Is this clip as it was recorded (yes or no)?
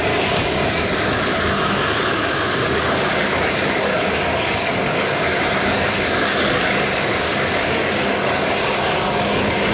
no